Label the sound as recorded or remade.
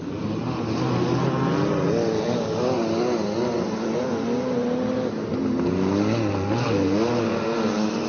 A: recorded